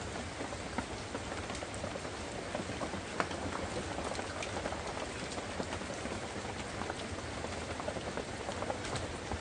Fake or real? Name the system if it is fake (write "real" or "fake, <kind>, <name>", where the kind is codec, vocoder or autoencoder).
real